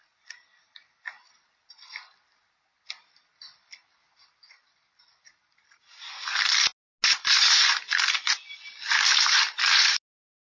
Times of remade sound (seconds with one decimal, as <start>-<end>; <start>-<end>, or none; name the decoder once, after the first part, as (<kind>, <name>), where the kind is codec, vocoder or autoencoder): none